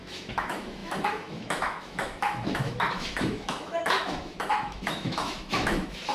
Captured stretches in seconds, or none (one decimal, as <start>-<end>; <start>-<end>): none